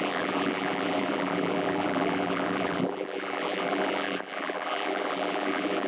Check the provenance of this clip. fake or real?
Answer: fake